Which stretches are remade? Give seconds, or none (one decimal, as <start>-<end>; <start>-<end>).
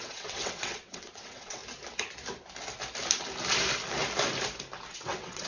0.0-1.6; 4.9-5.5